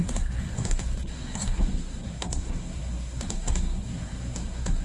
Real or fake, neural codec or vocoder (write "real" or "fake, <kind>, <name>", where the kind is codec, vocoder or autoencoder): fake, codec, SNAC